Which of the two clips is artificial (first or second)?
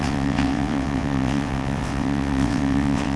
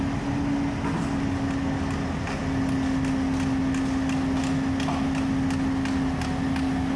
first